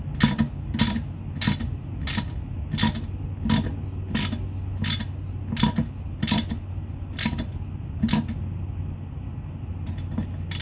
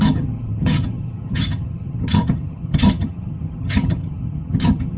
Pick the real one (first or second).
first